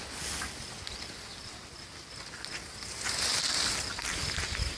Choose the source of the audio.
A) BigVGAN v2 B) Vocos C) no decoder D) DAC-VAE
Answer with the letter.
C